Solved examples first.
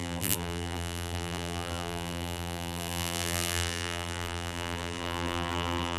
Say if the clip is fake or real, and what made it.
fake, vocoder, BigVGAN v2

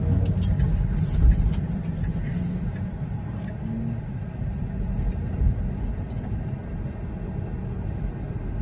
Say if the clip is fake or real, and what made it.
real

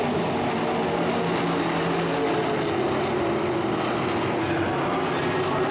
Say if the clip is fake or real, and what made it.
real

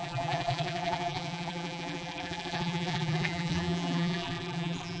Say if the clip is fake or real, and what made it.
fake, vocoder, BigVGAN v2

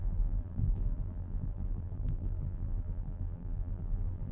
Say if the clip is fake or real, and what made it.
fake, vocoder, BigVGAN v2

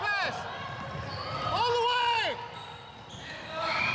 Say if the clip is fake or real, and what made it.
real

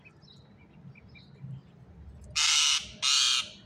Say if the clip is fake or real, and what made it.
real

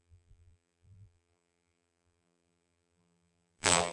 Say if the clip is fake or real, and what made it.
fake, vocoder, BigVGAN v2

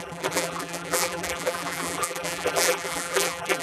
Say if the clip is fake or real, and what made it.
fake, vocoder, BigVGAN v2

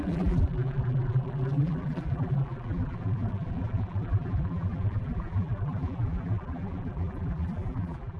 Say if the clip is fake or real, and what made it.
fake, vocoder, BigVGAN v2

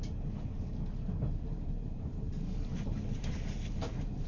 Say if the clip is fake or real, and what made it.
fake, vocoder, BigVGAN v2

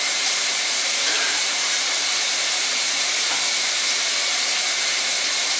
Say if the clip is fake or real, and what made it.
fake, vocoder, BigVGAN v2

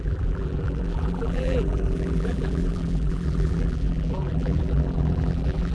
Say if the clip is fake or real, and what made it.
fake, vocoder, BigVGAN v2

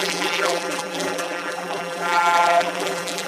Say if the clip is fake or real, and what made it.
fake, vocoder, BigVGAN v2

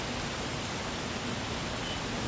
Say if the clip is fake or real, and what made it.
real